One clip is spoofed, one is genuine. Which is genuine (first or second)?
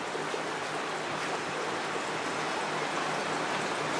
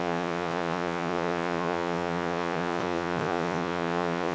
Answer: first